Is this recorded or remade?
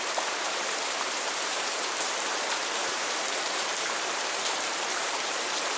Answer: remade